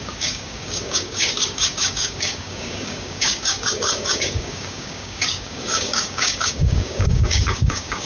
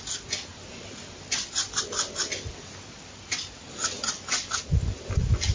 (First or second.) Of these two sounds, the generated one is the first